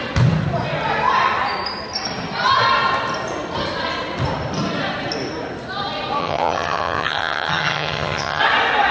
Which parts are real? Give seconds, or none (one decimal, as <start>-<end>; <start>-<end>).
0.0-6.2; 8.4-8.9